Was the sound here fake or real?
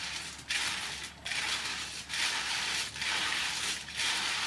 real